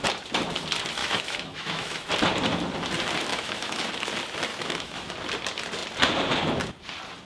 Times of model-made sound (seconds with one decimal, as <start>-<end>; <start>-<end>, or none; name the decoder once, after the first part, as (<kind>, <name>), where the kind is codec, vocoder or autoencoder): 1.0-2.1 (autoencoder, DAC-VAE); 3.3-3.9; 4.5-5.1